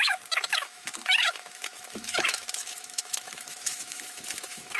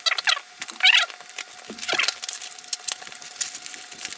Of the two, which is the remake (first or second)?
first